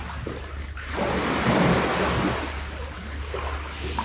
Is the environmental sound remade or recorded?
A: recorded